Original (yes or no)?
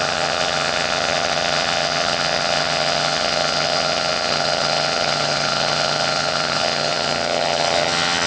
no